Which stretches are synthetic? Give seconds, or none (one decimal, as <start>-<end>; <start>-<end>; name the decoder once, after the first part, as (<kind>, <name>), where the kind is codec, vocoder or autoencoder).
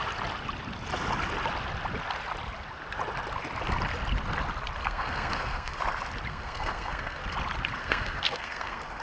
4.8-5.8 (codec, SNAC); 6.3-7.2; 7.8-9.0